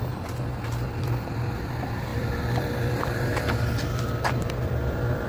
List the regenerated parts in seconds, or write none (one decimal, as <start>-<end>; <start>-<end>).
0.0-5.3